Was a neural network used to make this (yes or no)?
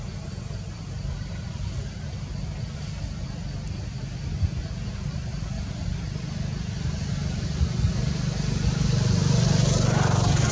no